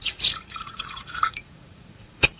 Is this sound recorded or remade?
remade